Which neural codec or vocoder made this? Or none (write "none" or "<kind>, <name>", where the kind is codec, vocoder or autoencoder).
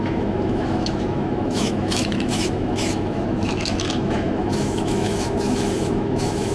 autoencoder, DAC-VAE